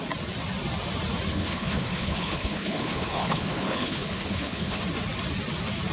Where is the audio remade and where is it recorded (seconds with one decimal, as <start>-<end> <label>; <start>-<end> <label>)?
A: 0.0-1.3 recorded; 1.3-4.8 remade; 4.8-5.9 recorded